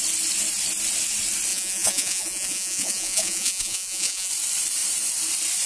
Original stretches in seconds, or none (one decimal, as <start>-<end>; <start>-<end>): 0.0-1.5; 4.3-5.7